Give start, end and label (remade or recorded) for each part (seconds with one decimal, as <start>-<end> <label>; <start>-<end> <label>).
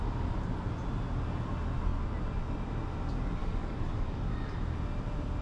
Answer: 0.0-3.4 recorded; 3.4-4.2 remade; 4.2-5.4 recorded